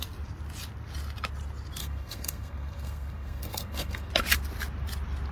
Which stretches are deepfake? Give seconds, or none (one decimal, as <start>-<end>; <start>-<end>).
1.8-4.1